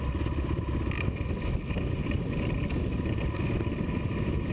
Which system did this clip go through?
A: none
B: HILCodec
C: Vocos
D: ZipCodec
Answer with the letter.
A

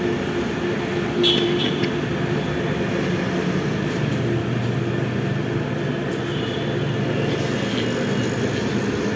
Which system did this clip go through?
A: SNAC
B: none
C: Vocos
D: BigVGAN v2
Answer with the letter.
B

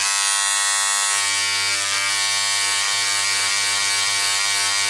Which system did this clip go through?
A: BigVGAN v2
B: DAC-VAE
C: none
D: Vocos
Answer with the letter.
C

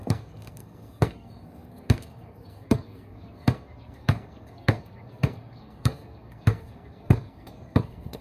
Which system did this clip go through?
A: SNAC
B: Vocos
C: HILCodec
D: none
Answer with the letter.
A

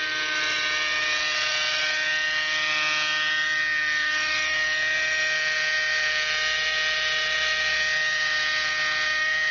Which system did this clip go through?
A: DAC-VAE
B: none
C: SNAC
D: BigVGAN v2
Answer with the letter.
B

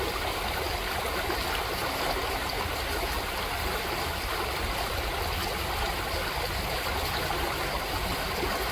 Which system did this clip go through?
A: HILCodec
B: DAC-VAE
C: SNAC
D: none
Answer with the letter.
D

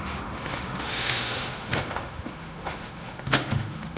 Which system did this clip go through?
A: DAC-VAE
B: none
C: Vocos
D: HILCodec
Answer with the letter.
A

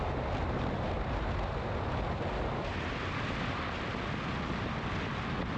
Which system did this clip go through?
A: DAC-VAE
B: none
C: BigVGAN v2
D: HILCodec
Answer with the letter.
B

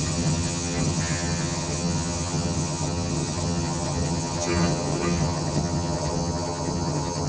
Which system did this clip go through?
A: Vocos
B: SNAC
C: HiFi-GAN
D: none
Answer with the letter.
C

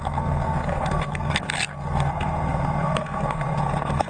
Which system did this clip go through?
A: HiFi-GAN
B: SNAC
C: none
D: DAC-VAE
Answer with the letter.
B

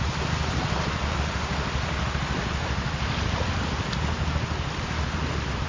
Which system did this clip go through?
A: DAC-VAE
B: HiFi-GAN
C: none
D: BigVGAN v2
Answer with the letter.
C